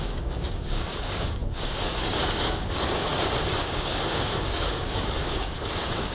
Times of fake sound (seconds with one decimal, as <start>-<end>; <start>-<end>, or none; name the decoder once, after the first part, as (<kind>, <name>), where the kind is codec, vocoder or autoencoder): 0.0-3.1 (codec, DAC); 3.6-6.1